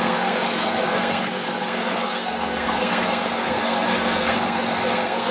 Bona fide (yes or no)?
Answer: no